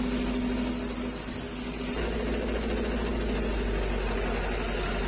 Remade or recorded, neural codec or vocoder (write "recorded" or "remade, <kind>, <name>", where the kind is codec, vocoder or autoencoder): recorded